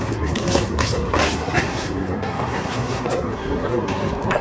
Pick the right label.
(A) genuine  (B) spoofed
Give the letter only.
B